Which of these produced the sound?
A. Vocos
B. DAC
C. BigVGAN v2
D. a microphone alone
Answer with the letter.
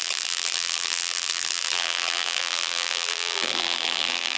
C